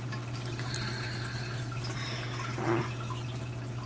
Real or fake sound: real